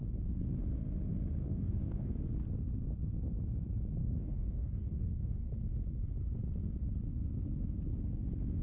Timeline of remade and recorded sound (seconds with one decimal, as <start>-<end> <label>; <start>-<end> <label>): 0.0-1.4 recorded; 1.4-2.1 remade; 2.1-4.0 recorded; 4.0-5.5 remade; 5.5-8.6 recorded

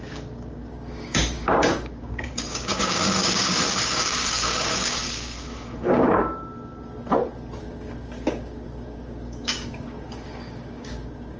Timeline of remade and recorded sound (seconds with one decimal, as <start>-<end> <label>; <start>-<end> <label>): 0.0-6.2 remade; 6.2-7.6 recorded; 7.6-11.4 remade

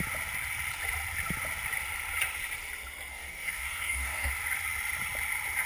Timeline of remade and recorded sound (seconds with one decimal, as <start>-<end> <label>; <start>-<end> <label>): 0.0-3.1 recorded; 3.1-4.3 remade; 4.3-5.7 recorded